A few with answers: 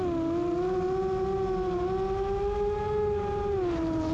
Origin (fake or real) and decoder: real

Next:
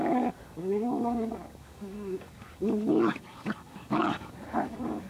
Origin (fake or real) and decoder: fake, codec, DAC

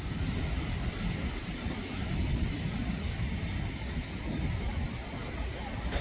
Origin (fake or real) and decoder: real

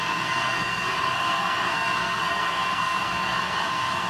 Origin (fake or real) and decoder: fake, codec, SNAC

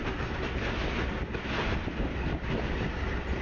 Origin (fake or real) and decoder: real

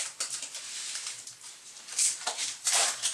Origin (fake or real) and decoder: fake, vocoder, BigVGAN v2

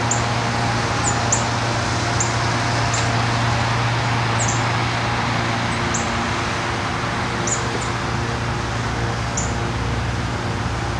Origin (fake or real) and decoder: real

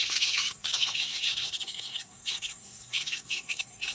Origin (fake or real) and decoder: fake, codec, SNAC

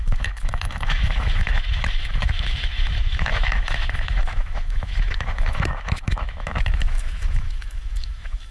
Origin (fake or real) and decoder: fake, autoencoder, DAC-VAE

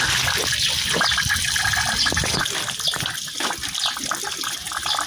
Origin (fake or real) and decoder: real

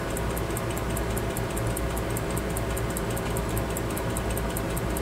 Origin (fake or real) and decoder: real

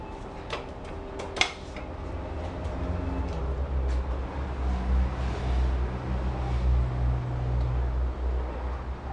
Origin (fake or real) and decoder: real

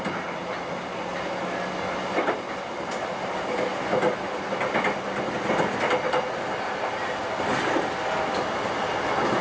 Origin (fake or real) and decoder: real